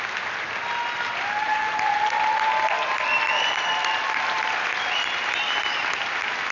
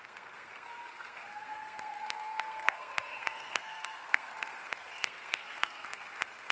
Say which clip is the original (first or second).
first